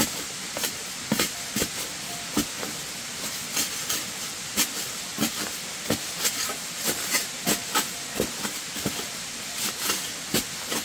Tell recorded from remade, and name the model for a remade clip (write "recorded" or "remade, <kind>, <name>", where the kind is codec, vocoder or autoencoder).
recorded